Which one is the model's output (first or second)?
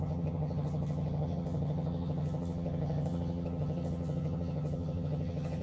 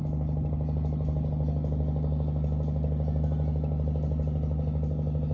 first